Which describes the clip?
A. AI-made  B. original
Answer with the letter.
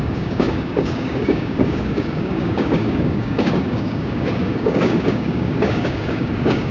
A